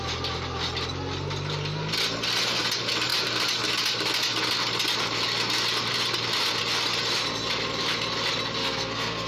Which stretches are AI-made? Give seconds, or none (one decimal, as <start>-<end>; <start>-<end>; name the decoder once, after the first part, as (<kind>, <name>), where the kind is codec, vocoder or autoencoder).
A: 8.6-9.3 (codec, SNAC)

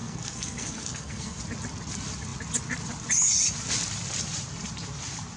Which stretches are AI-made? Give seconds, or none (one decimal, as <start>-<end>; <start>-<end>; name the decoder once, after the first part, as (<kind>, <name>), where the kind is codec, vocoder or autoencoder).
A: 0.0-1.4 (codec, SNAC)

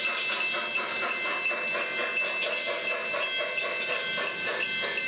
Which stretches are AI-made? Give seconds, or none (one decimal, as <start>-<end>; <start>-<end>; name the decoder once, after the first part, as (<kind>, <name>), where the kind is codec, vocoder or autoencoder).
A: none

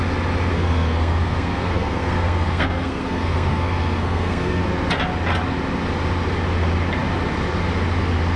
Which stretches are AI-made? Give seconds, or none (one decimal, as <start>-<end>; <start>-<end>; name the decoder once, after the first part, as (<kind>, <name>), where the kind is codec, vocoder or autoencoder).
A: 0.5-4.6 (codec, SNAC)

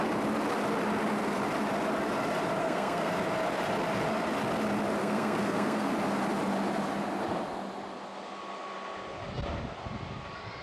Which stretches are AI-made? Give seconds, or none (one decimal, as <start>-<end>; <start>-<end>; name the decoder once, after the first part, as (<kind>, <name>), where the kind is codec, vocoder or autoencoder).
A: 2.6-3.1 (codec, SNAC); 5.0-5.9

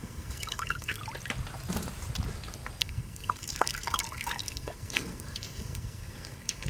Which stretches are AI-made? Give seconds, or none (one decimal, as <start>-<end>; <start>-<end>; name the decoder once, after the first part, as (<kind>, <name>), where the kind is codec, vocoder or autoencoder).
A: 0.0-1.0 (codec, SNAC); 2.8-6.7

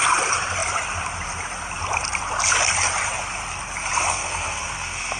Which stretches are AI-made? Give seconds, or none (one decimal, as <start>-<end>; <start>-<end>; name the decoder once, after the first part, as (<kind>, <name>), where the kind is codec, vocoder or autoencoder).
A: 4.1-5.2 (codec, SNAC)